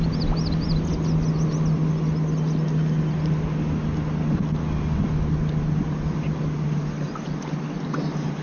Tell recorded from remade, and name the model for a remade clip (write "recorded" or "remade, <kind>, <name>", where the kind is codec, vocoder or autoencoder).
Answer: recorded